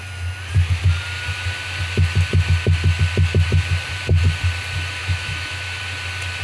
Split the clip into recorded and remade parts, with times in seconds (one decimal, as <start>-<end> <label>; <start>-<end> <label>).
0.0-5.0 recorded; 5.0-5.8 remade; 5.8-6.4 recorded